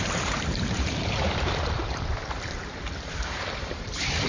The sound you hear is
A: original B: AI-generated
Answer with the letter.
B